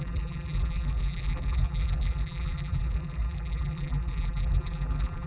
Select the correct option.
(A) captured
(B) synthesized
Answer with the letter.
B